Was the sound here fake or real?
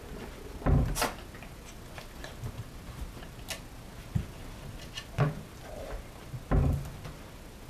real